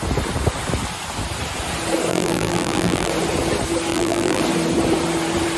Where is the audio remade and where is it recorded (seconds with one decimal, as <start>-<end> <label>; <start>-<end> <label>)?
0.0-2.1 recorded; 2.1-3.1 remade; 3.1-3.9 recorded; 3.9-4.4 remade; 4.4-5.6 recorded